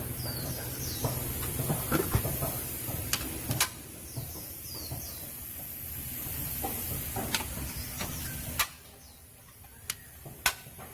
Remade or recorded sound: recorded